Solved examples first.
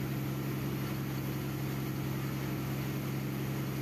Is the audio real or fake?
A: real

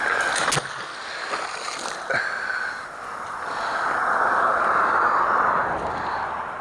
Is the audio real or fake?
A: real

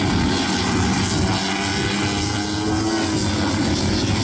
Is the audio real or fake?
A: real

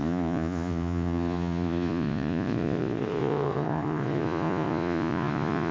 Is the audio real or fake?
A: fake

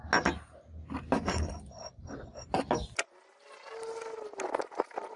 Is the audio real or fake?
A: real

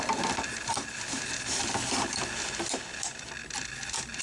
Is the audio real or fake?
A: real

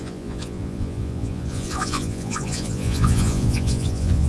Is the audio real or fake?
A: fake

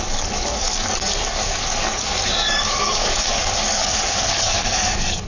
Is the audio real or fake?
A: fake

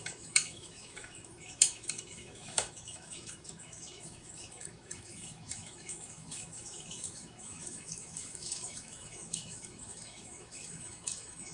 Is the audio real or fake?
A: fake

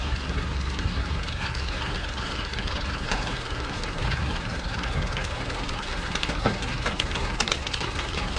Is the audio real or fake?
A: fake